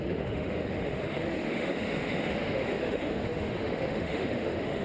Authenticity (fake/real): fake